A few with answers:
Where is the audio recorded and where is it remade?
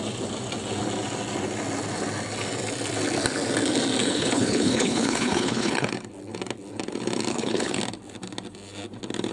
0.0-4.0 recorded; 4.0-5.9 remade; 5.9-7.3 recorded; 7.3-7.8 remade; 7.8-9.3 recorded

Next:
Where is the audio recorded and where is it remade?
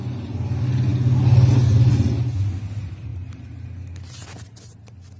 0.0-5.2 recorded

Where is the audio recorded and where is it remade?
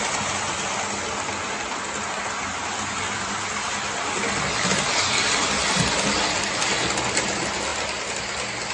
0.0-8.7 recorded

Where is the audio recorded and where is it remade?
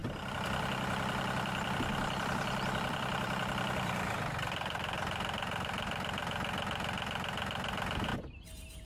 0.0-8.1 remade; 8.1-8.9 recorded